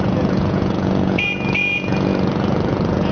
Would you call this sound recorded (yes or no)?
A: no